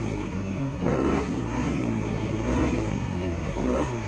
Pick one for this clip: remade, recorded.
remade